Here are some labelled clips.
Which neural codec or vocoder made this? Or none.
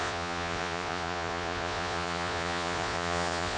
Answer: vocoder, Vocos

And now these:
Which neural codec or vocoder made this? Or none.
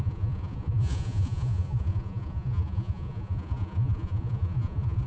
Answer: vocoder, Vocos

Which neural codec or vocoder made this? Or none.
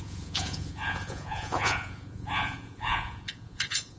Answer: vocoder, Vocos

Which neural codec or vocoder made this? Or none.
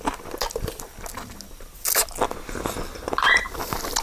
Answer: none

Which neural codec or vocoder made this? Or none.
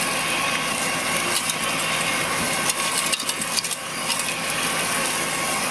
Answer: none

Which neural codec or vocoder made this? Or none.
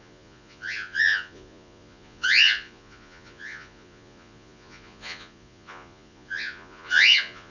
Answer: vocoder, Vocos